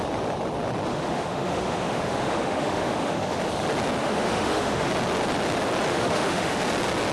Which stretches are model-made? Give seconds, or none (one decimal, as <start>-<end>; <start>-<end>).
0.9-3.4; 4.0-4.9; 5.9-6.6